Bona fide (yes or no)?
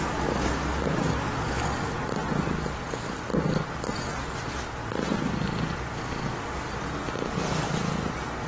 yes